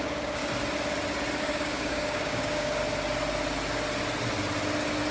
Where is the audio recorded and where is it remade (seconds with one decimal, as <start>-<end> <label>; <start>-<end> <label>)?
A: 0.0-0.4 remade; 0.4-1.4 recorded; 1.4-2.8 remade; 2.8-5.1 recorded